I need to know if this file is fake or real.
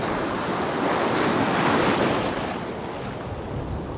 real